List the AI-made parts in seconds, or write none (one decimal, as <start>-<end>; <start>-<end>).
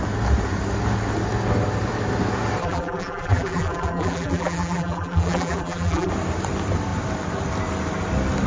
2.6-6.1